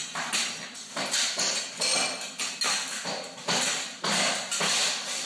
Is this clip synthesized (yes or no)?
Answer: no